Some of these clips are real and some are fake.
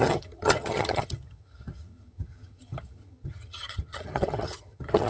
fake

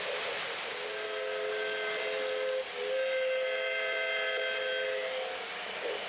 real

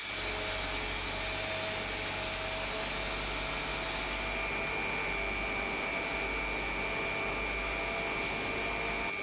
real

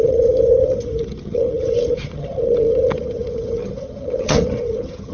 fake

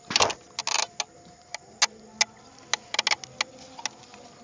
real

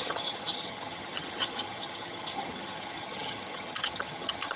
fake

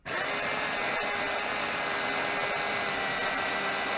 real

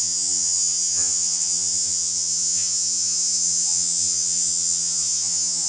fake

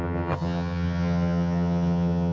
fake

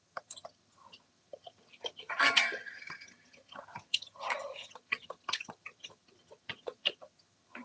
fake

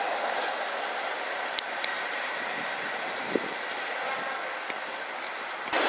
real